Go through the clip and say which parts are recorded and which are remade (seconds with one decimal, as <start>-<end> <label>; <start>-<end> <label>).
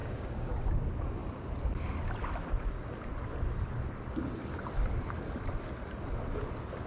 0.0-0.5 remade; 0.5-6.9 recorded